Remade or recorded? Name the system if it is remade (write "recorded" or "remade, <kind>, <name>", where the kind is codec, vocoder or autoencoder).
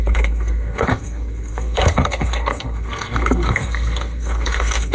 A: remade, codec, SNAC